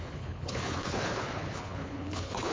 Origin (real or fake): fake